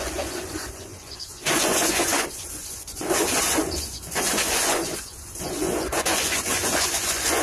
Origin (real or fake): fake